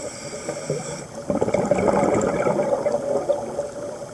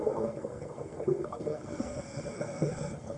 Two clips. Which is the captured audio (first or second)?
first